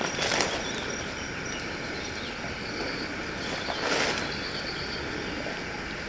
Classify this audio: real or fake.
real